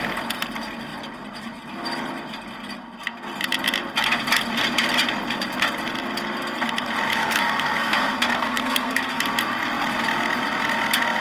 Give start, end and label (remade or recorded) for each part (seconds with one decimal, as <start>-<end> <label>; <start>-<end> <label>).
0.0-7.2 recorded; 7.2-9.2 remade; 9.2-11.2 recorded